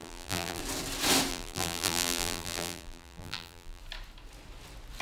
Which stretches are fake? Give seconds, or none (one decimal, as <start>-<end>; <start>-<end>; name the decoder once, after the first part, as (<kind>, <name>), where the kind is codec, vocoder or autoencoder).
0.0-0.6 (vocoder, BigVGAN v2); 1.3-3.8